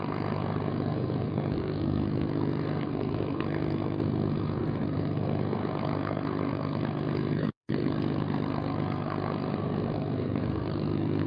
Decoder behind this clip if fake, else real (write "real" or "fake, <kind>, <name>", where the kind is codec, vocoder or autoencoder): fake, codec, SNAC